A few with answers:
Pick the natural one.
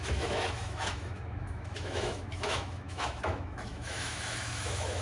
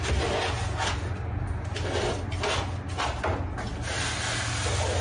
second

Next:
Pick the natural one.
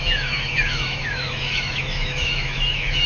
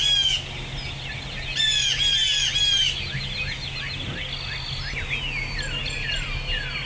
second